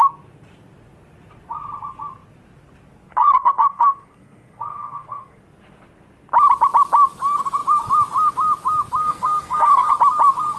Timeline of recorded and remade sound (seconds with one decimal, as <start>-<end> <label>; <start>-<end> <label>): 0.0-3.1 recorded; 3.1-5.4 remade; 5.4-9.0 recorded; 9.0-9.9 remade; 9.9-10.6 recorded